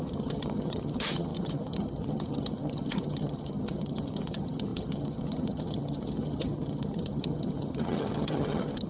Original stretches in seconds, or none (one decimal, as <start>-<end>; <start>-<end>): none